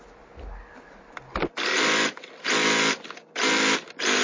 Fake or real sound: real